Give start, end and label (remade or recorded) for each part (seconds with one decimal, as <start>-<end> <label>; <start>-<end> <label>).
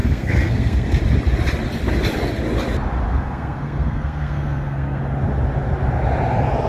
0.0-1.0 remade; 1.0-3.1 recorded; 3.1-5.0 remade; 5.0-6.7 recorded